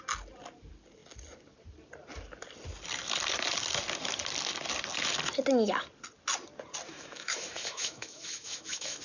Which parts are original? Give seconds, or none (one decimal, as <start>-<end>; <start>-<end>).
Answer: 0.0-6.9